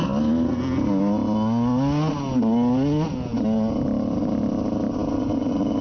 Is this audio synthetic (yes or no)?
no